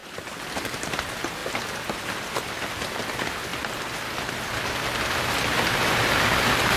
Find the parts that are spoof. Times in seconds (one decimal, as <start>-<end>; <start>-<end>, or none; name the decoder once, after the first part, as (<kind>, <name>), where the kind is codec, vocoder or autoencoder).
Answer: 0.0-0.8 (vocoder, BigVGAN v2); 3.5-5.9